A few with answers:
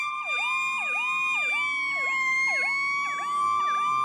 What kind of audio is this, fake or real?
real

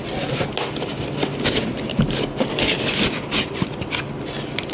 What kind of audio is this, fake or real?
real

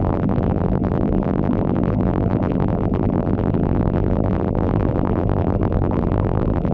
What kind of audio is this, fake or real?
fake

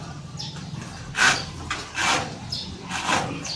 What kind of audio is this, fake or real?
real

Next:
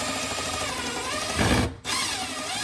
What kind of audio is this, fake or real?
real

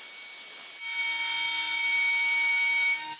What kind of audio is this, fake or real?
real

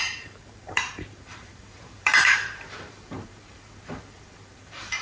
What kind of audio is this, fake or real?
fake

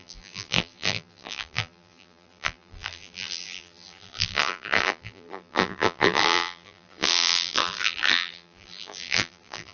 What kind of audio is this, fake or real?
fake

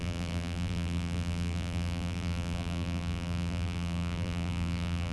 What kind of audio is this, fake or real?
fake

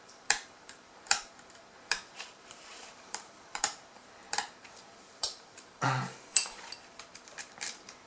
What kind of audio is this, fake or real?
fake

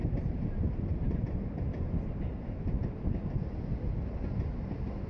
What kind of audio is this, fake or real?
real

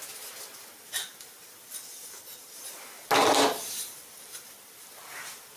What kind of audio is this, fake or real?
real